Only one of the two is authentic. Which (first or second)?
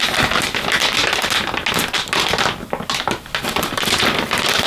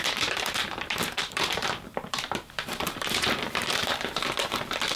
first